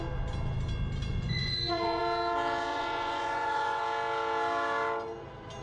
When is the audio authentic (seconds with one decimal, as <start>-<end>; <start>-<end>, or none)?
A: 0.0-1.1; 2.0-2.7; 3.8-5.6

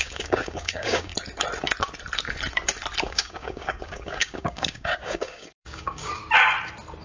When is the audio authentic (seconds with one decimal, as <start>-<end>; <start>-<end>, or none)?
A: 1.1-3.0; 6.2-7.0

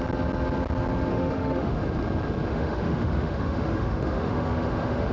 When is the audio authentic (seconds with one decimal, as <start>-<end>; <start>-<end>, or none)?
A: 0.0-1.1; 1.8-2.5

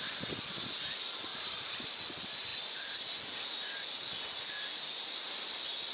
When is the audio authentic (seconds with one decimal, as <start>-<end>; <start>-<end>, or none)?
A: 0.0-1.3; 2.0-5.9

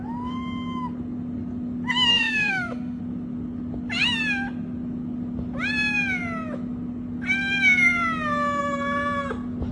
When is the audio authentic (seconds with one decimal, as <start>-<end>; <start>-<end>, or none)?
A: 0.0-2.1; 3.0-9.7

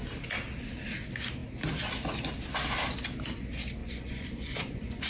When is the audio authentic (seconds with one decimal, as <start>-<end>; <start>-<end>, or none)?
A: 0.0-3.8

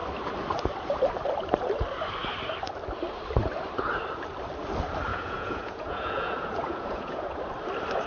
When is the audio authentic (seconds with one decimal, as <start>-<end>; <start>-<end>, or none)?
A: 0.0-5.1; 7.4-8.1